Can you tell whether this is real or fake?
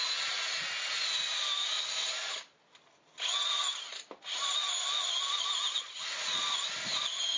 real